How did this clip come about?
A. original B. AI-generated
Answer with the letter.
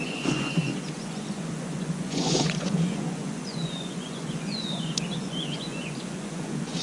B